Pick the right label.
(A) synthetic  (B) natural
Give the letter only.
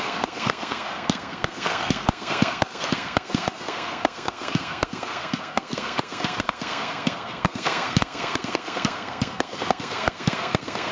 A